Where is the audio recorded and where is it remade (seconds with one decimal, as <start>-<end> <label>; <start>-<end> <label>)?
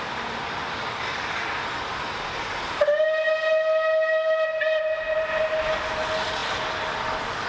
0.0-7.5 recorded